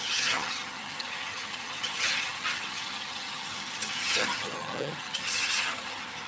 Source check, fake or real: fake